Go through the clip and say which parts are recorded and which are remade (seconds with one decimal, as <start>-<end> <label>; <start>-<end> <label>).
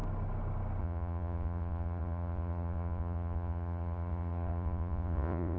0.0-0.8 recorded; 0.8-5.6 remade